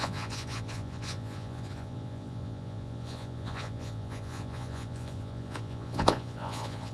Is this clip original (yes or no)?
no